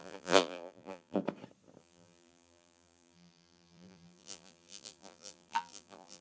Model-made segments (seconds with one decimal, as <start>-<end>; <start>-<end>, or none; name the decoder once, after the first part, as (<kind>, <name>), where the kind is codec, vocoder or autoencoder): 0.0-1.2 (vocoder, BigVGAN v2); 1.8-6.2